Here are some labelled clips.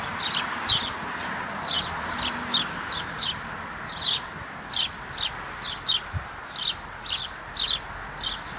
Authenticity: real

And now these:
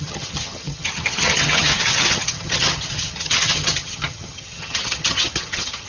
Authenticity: fake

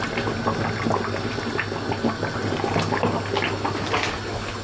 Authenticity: real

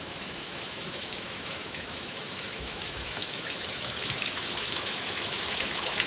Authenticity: fake